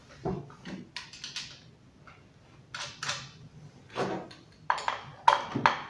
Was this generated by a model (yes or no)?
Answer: no